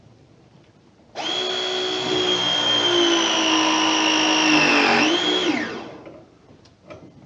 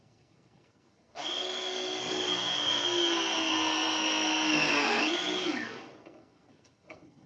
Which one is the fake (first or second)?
second